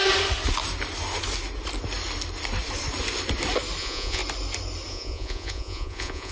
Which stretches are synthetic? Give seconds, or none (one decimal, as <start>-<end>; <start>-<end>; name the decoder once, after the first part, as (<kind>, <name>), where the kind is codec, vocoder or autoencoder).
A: 3.8-4.2 (vocoder, Vocos); 4.9-6.3